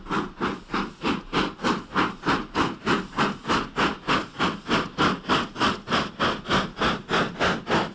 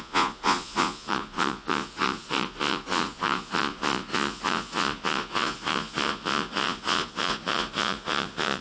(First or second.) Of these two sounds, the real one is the first